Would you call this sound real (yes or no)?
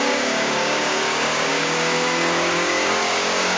no